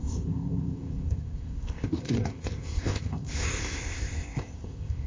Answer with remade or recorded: remade